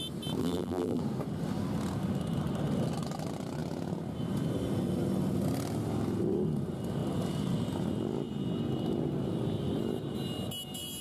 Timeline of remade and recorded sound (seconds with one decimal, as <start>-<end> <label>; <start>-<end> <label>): 0.0-0.4 recorded; 0.4-1.0 remade; 1.0-11.0 recorded